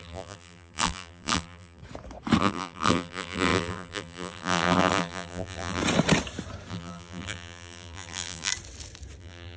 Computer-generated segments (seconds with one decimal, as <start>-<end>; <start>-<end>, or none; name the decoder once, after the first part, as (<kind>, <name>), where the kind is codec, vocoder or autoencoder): 0.0-1.8 (vocoder, BigVGAN v2); 2.4-5.8; 6.7-8.5; 9.2-9.6